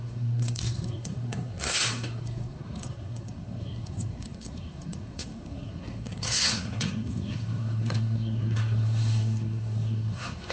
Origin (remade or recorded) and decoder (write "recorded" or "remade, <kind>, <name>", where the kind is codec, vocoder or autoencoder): remade, codec, SNAC